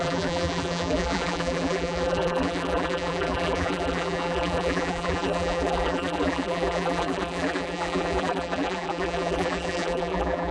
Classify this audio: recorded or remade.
remade